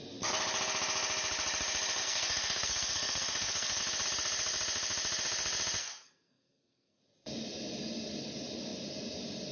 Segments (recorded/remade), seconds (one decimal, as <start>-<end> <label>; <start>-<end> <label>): 0.0-2.0 recorded; 2.0-3.8 remade; 3.8-5.8 recorded; 5.8-7.0 remade; 7.0-9.5 recorded